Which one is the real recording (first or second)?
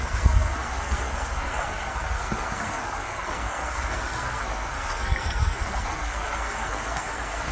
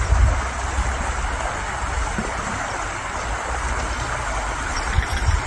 second